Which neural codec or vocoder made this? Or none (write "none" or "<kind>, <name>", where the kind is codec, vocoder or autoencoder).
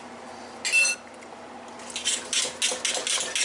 none